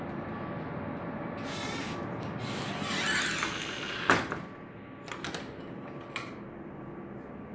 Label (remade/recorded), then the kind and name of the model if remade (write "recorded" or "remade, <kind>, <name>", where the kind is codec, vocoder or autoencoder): recorded